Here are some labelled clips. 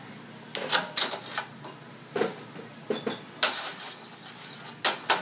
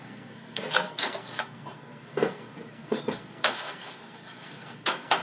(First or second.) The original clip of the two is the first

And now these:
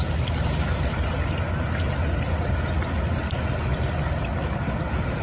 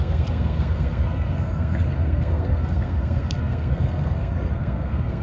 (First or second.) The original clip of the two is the first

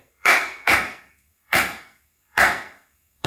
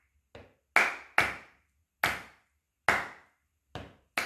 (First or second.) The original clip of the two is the second